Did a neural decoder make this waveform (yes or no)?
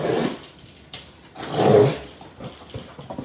no